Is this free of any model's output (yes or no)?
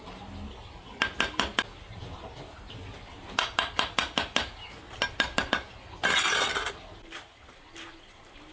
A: yes